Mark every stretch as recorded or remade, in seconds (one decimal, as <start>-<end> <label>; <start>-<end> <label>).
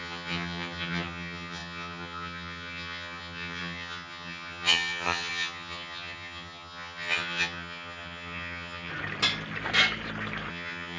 0.0-8.9 remade; 8.9-10.5 recorded; 10.5-11.0 remade